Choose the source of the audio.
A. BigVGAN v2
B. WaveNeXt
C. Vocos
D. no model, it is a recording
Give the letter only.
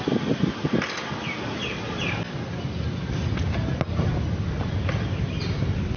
D